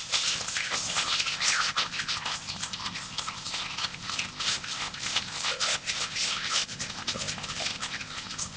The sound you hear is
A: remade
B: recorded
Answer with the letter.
A